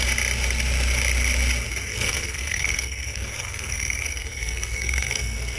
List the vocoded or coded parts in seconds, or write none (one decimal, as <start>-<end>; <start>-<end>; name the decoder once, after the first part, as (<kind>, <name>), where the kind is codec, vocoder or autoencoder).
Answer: 1.9-5.6 (codec, SNAC)